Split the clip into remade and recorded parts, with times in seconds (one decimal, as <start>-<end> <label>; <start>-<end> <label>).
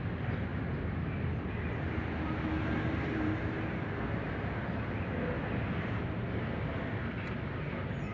0.0-8.1 recorded